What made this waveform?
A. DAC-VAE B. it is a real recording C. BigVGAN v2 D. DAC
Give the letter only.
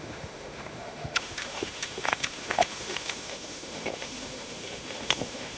A